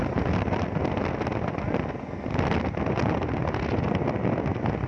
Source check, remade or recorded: recorded